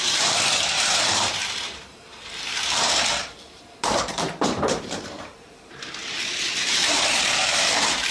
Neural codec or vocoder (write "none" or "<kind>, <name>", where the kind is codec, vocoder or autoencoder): vocoder, BigVGAN v2